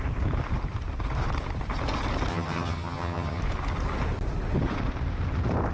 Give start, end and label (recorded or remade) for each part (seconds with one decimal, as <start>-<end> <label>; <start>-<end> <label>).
0.0-2.3 recorded; 2.3-3.4 remade; 3.4-5.7 recorded